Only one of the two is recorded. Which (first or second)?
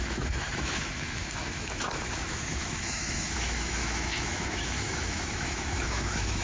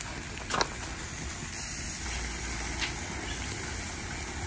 second